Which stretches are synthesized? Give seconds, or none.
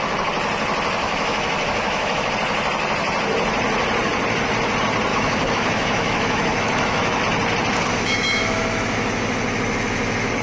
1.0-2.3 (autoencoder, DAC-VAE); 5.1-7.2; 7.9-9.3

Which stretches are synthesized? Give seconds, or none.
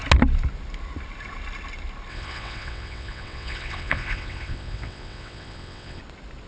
2.1-6.0 (vocoder, WaveNeXt)